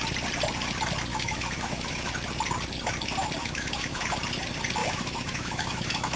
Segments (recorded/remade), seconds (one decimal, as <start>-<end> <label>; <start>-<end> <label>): 0.0-1.1 recorded; 1.1-2.1 remade; 2.1-3.4 recorded; 3.4-4.1 remade; 4.1-4.8 recorded; 4.8-6.2 remade